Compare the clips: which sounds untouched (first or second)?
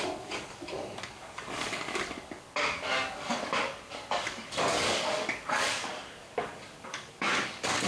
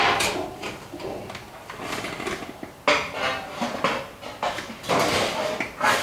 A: second